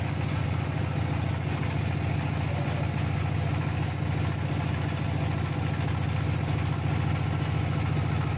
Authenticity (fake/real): real